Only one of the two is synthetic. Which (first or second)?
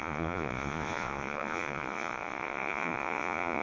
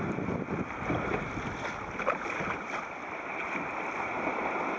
first